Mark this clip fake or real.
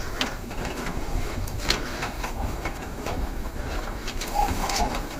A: fake